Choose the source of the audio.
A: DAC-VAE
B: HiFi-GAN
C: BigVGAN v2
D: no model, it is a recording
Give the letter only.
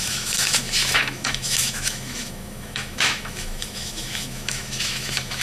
A